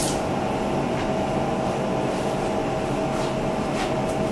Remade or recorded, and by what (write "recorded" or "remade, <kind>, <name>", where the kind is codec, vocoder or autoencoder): recorded